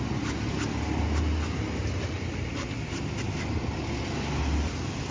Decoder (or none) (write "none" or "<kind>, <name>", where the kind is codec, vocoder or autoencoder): none